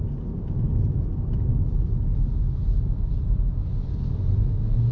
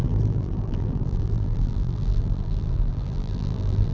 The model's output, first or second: second